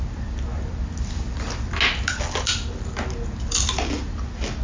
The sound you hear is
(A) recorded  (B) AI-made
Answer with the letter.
A